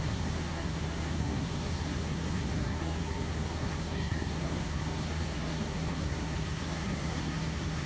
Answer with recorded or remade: remade